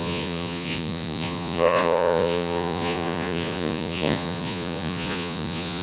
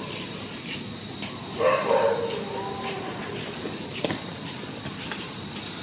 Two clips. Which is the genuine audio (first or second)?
second